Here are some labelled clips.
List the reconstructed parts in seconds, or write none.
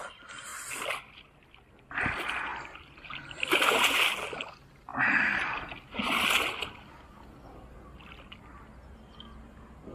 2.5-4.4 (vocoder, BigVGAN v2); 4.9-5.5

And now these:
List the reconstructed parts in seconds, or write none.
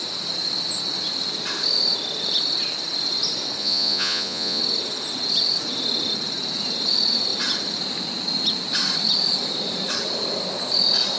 3.6-4.6 (vocoder, Vocos)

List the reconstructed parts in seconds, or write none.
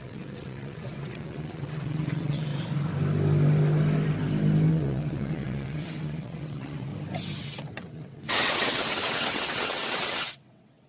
0.0-2.5 (vocoder, WaveNeXt); 4.7-6.9; 7.4-10.9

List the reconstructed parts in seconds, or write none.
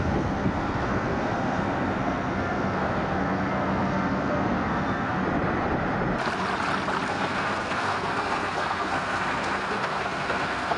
0.0-5.2 (codec, SNAC); 7.1-10.8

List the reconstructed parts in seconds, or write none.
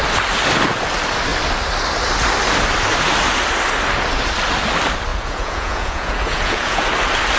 5.1-6.9 (vocoder, Vocos)